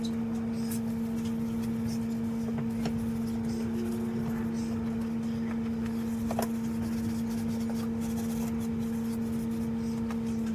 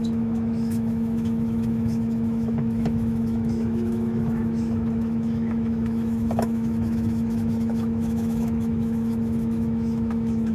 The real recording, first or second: first